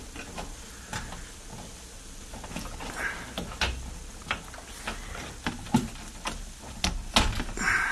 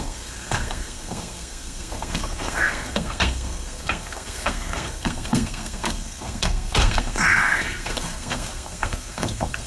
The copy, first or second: second